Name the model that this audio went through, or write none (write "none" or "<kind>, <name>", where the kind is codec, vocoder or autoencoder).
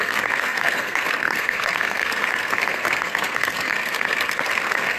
codec, SNAC